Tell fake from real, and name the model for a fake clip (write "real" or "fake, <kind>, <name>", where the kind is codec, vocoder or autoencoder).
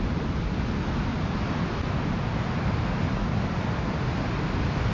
real